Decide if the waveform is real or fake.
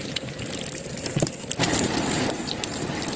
fake